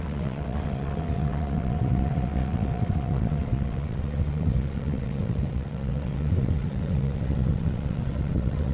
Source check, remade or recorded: remade